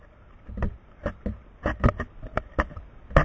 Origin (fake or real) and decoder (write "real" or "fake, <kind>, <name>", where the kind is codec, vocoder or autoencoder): real